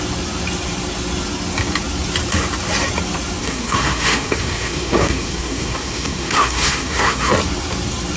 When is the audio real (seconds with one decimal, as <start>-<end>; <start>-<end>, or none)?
0.0-3.4; 7.3-8.2